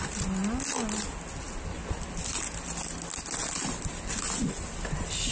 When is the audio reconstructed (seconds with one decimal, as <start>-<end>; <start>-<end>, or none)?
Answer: none